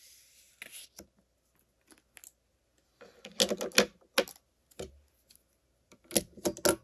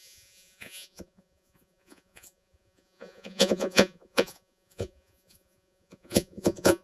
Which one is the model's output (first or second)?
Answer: second